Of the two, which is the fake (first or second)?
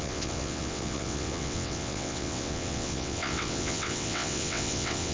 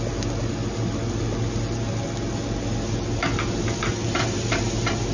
first